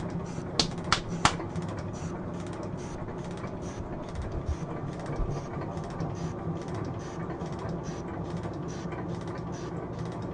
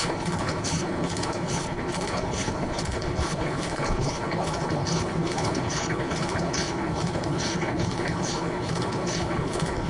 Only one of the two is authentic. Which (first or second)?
first